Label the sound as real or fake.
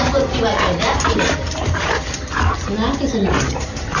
real